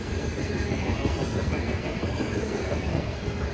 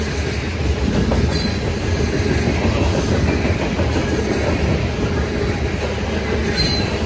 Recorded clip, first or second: second